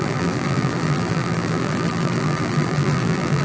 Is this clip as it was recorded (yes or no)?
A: no